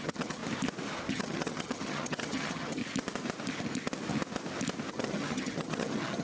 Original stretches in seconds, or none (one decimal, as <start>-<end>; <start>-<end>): 0.4-1.1; 2.8-4.9